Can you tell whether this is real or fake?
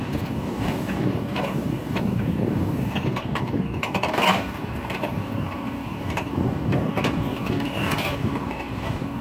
fake